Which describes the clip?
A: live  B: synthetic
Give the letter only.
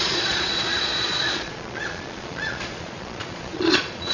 B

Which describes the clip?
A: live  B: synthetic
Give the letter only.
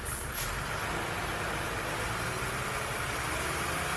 A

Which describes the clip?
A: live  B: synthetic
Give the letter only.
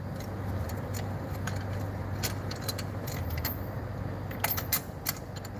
A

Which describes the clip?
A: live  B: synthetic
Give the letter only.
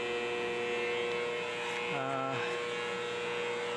A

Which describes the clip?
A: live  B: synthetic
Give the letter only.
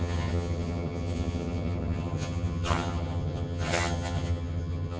B